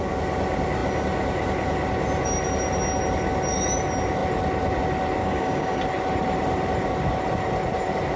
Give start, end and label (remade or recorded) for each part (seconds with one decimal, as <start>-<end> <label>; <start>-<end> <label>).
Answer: 0.0-5.2 recorded; 5.2-5.8 remade; 5.8-8.2 recorded